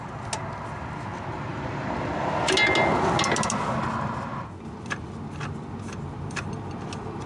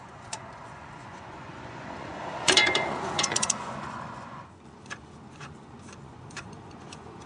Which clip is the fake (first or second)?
second